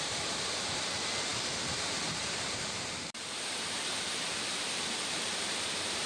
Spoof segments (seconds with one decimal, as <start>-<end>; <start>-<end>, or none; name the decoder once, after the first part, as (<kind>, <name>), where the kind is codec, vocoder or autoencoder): 0.0-6.1 (vocoder, BigVGAN v2)